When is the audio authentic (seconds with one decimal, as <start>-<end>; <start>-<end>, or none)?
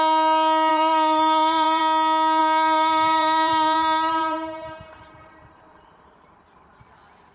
0.0-0.7; 1.8-2.4; 6.8-7.3